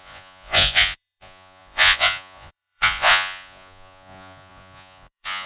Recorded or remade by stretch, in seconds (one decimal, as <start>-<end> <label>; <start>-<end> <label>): 0.0-5.5 remade